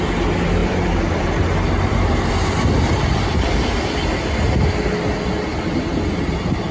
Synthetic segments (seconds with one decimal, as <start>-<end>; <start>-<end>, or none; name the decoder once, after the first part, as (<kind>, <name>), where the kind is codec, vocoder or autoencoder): 0.6-2.4 (vocoder, BigVGAN v2)

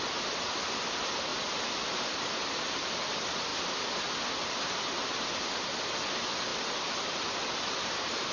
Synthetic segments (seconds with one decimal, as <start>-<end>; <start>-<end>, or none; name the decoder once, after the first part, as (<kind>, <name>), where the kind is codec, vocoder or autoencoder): none

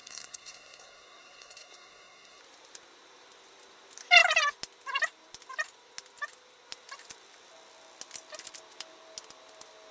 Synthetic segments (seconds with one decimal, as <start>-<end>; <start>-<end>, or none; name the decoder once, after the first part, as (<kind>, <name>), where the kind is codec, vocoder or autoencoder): 0.0-2.4 (codec, SNAC)

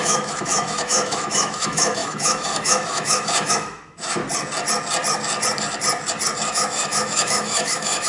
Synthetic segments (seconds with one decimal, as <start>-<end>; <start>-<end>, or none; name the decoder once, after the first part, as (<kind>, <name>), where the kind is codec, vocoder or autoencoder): 0.0-4.2 (autoencoder, DAC-VAE); 6.5-8.1

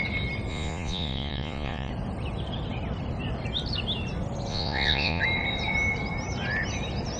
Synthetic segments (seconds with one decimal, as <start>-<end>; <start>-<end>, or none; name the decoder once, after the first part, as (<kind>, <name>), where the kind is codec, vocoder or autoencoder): 0.5-1.9 (vocoder, Vocos); 4.5-5.2